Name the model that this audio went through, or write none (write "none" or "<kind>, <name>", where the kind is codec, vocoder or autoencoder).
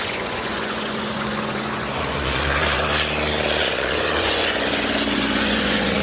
vocoder, Vocos